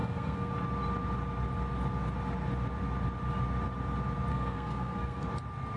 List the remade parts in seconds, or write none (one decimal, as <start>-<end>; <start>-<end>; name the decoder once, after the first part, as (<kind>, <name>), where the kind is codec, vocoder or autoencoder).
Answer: 0.0-0.5 (codec, SNAC); 4.3-5.2

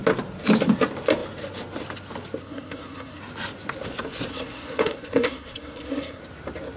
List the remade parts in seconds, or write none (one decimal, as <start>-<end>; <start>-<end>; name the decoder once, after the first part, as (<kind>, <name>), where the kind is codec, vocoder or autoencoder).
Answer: 2.4-3.2 (codec, SNAC); 4.3-6.2

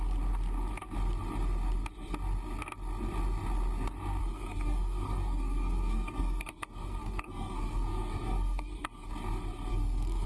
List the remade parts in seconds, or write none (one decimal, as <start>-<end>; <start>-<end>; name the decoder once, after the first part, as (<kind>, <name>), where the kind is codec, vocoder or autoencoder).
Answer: 4.2-9.1 (codec, SNAC); 9.7-10.3

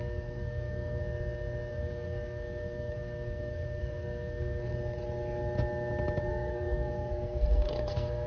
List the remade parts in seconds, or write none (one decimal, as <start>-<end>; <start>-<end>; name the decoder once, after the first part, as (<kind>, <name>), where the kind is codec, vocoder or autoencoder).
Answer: 0.0-1.0 (codec, SNAC); 1.7-4.7; 6.2-8.3

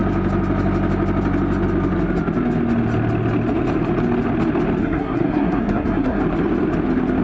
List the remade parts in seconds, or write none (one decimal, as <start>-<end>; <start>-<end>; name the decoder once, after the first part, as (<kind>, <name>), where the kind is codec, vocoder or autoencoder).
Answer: 4.8-6.2 (codec, SNAC)